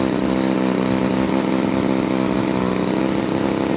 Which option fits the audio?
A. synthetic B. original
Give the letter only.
B